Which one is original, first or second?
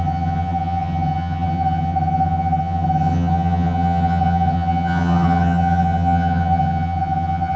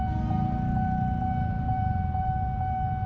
second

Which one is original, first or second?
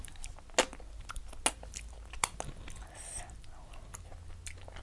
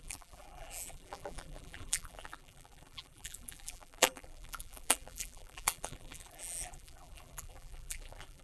first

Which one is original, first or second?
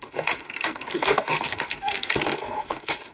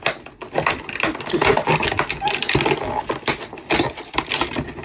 second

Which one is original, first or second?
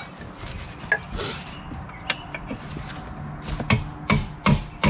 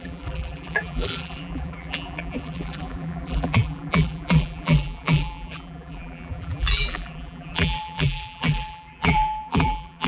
first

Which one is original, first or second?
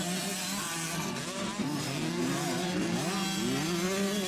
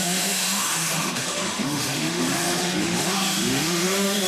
first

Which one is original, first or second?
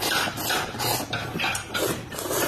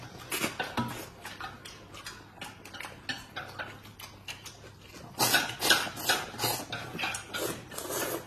second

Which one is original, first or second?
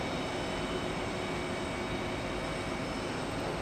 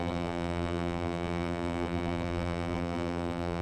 first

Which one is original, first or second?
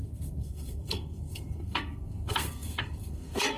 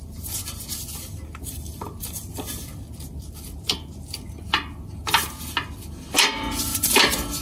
second